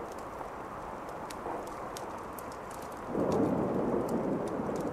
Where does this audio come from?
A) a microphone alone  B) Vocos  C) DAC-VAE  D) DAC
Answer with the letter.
A